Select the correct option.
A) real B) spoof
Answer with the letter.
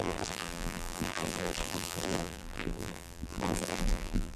B